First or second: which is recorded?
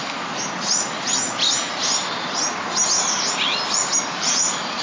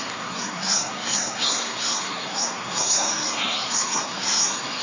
first